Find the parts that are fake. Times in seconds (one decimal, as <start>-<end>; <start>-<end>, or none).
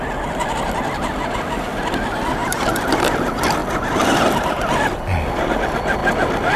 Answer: 3.6-4.7